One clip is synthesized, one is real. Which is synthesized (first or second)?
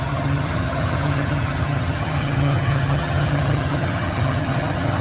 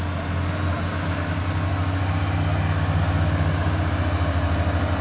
first